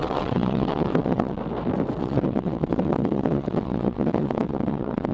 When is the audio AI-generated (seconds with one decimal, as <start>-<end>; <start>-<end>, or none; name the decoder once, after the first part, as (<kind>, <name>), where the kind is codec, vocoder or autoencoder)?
0.0-1.4 (vocoder, WaveNeXt); 2.0-5.1